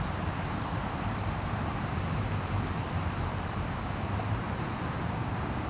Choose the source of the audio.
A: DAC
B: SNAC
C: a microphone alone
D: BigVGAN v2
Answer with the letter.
D